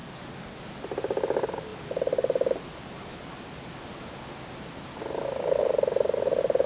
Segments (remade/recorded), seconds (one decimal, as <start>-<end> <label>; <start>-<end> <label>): 0.0-0.6 remade; 0.6-6.7 recorded